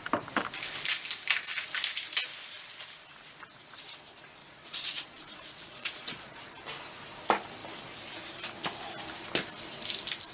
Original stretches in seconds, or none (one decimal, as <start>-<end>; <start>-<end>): 0.0-4.4; 6.4-10.3